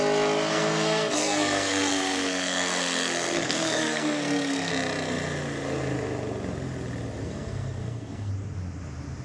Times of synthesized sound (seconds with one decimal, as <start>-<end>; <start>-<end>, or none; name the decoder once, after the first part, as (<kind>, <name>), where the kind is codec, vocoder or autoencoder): 0.5-4.7 (codec, SNAC); 7.2-8.3